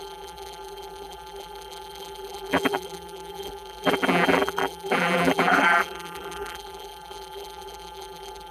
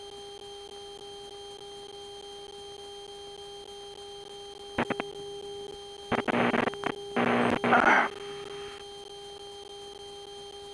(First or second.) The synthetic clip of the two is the first